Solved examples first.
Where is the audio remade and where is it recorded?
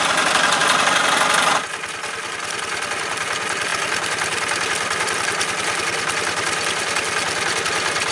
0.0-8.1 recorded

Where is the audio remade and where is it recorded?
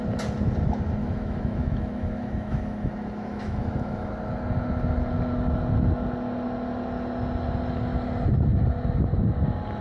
0.0-1.0 recorded; 1.0-4.1 remade; 4.1-9.8 recorded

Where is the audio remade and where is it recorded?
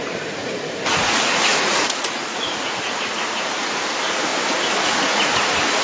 0.0-4.3 remade; 4.3-5.0 recorded; 5.0-5.8 remade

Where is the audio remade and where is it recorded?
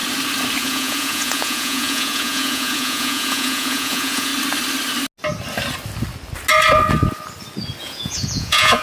0.0-0.6 recorded; 0.6-4.3 remade; 4.3-7.8 recorded; 7.8-8.8 remade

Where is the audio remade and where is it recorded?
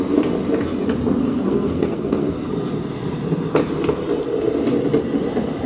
0.0-1.2 recorded; 1.2-2.5 remade; 2.5-5.7 recorded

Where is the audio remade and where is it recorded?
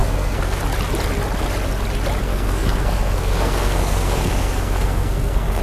0.0-0.6 remade; 0.6-2.2 recorded; 2.2-5.6 remade